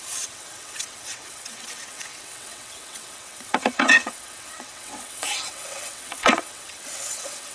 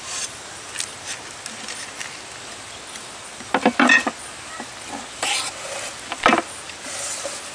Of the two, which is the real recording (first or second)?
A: second